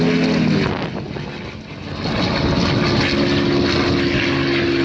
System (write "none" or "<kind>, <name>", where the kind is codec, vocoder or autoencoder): none